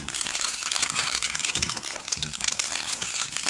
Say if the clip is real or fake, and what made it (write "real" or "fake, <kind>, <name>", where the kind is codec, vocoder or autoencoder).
fake, codec, SNAC